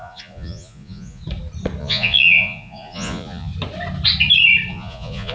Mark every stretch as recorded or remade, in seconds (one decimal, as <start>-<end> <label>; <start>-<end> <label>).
0.0-1.2 remade; 1.2-1.8 recorded; 1.8-3.5 remade; 3.5-4.7 recorded; 4.7-5.3 remade